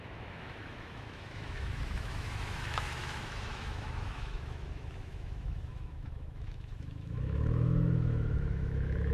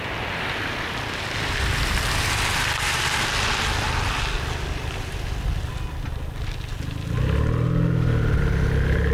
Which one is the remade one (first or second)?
first